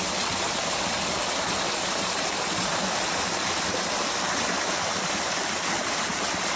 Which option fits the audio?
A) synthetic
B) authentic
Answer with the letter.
B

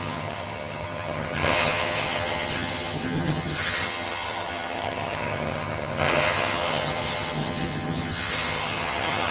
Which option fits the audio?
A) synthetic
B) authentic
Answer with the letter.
A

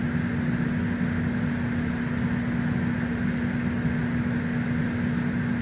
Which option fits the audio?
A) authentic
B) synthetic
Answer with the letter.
A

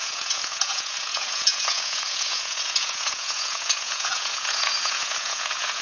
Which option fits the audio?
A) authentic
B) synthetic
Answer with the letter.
B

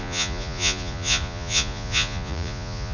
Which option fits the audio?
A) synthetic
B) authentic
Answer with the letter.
A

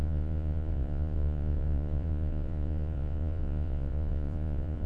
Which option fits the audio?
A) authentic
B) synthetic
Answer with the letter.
B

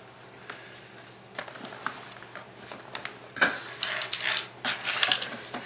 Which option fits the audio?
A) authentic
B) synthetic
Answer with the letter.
A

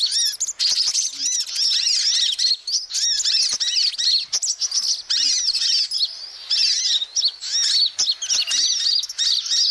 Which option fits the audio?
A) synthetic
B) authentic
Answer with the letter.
B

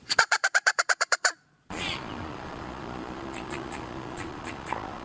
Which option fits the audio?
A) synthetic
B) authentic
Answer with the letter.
A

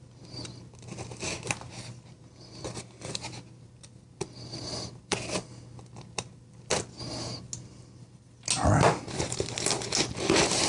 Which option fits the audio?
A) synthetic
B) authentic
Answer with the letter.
B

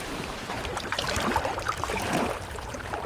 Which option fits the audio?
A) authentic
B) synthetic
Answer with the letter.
B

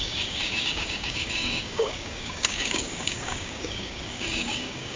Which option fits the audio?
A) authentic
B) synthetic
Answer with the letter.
B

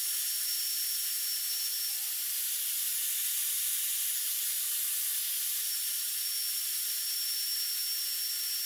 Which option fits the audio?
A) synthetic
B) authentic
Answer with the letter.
B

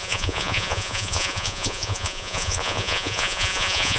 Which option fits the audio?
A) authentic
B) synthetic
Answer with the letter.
B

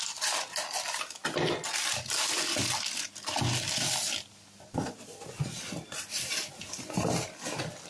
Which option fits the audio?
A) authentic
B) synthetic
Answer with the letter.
A